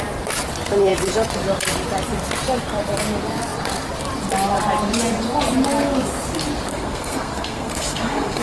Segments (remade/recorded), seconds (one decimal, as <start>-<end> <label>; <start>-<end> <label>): 0.0-6.7 recorded; 6.7-8.4 remade